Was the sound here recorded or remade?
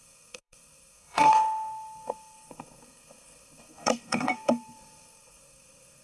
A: remade